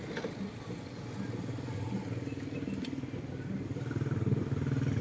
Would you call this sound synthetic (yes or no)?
no